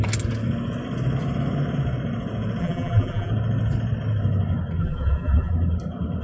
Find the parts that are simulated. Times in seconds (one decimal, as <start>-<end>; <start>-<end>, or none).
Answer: 2.6-3.3; 4.8-5.5